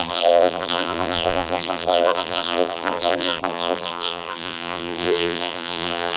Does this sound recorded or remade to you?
remade